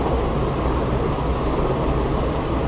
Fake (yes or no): no